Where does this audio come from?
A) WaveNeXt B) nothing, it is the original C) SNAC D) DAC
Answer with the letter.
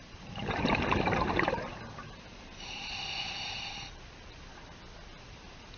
B